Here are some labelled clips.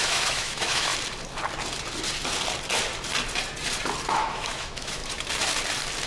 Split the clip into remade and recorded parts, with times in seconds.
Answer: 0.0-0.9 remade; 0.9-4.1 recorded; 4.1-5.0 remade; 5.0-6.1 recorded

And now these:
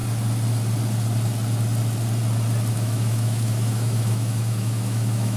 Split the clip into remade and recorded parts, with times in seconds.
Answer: 0.0-2.7 recorded; 2.7-5.4 remade